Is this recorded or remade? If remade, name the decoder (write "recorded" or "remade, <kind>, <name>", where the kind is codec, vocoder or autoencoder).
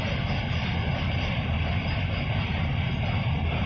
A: recorded